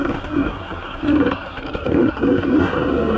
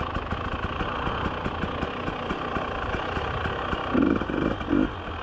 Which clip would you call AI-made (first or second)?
first